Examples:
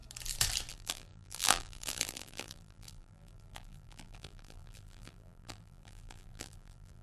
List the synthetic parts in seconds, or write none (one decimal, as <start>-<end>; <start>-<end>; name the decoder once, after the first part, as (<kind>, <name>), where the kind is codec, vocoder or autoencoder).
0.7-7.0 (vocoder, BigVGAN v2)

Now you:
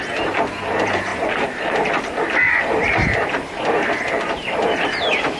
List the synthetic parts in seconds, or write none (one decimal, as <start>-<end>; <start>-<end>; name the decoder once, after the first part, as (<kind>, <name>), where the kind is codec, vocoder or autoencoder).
0.0-5.4 (vocoder, BigVGAN v2)

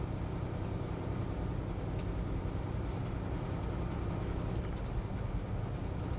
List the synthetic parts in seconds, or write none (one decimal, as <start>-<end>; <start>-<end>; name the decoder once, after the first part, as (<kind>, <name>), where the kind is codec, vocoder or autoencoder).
none

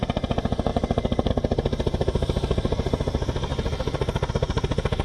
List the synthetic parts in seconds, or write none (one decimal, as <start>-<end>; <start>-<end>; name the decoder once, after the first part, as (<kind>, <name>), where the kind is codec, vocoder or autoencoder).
none